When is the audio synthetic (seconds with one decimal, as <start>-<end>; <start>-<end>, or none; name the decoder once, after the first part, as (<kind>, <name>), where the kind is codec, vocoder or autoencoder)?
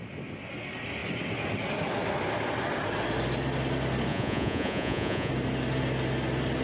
4.1-5.3 (vocoder, Vocos)